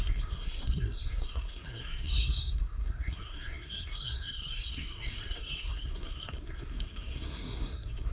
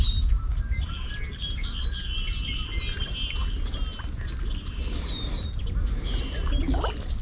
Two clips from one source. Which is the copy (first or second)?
first